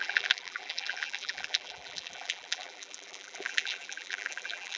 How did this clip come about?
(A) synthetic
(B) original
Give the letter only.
A